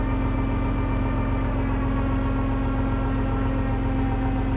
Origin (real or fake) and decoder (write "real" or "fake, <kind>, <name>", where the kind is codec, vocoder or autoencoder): real